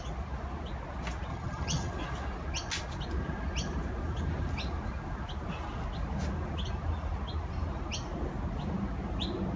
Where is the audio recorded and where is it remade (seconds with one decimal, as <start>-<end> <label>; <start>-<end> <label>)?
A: 0.0-1.3 recorded; 1.3-1.9 remade; 1.9-9.6 recorded